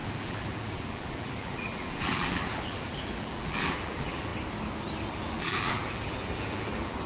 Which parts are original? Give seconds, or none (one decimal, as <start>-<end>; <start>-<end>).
4.3-5.1